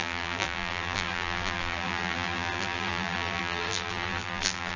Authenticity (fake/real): fake